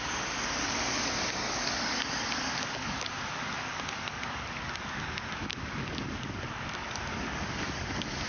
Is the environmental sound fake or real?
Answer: fake